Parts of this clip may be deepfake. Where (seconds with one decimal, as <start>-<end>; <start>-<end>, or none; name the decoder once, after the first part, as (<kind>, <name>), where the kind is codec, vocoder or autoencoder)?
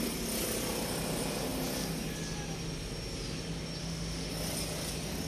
3.8-4.3 (autoencoder, DAC-VAE)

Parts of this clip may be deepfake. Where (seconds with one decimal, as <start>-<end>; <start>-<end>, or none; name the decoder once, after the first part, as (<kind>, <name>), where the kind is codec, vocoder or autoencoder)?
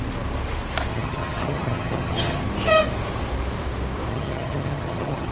0.9-2.4 (vocoder, HiFi-GAN); 4.1-5.3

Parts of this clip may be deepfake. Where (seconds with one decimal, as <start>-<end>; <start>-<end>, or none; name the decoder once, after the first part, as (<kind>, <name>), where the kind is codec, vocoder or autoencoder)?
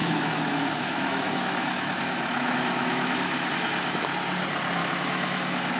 0.0-3.5 (autoencoder, DAC-VAE); 4.8-5.8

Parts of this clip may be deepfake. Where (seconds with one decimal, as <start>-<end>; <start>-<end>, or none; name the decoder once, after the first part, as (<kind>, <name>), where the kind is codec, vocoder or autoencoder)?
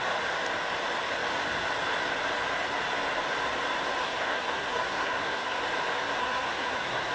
4.0-5.6 (codec, SNAC); 6.2-7.1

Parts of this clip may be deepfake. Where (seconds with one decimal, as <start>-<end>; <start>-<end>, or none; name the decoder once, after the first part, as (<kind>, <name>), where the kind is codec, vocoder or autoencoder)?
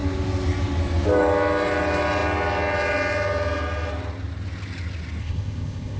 5.2-6.0 (codec, ZipCodec)